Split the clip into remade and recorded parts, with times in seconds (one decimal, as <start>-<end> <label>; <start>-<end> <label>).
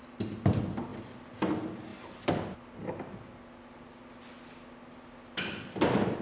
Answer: 0.0-6.2 recorded